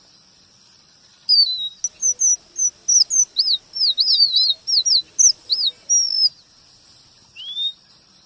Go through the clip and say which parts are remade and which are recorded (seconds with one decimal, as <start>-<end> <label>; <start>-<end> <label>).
0.0-8.3 recorded